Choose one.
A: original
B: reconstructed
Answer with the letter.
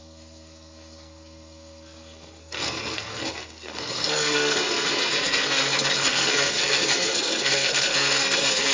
B